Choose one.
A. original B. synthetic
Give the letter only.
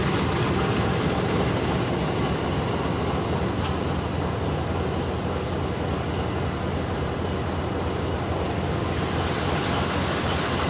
A